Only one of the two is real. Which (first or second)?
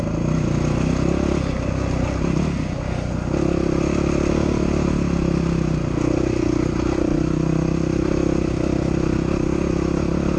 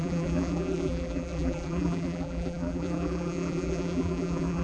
first